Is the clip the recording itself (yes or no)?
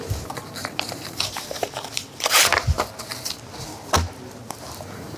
yes